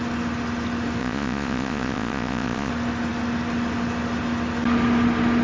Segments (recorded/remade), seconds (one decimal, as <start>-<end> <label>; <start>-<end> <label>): 0.0-1.0 recorded; 1.0-2.7 remade; 2.7-5.4 recorded